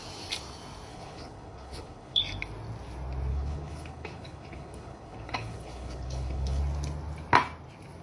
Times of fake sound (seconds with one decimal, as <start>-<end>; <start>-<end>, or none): 0.9-2.2; 3.3-6.6